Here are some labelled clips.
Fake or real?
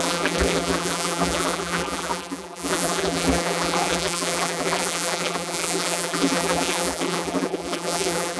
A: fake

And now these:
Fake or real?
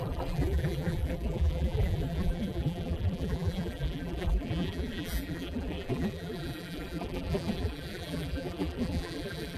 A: fake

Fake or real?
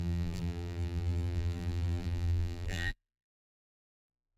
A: fake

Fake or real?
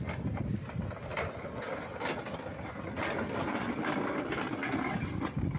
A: real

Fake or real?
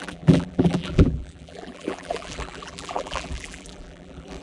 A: fake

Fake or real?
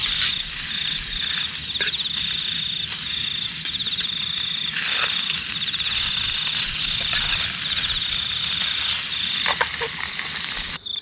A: real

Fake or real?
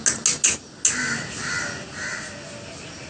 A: real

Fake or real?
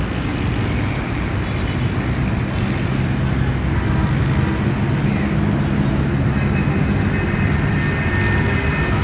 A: real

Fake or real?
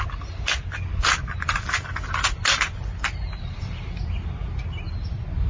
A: real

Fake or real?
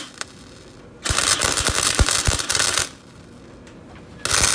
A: real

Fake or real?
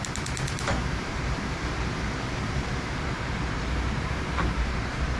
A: fake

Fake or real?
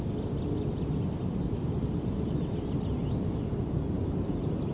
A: fake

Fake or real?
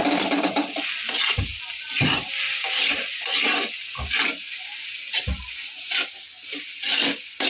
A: fake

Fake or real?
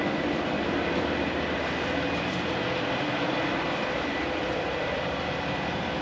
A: fake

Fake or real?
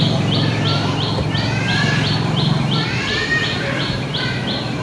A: fake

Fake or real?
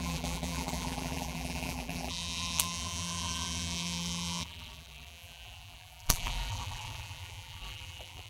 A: fake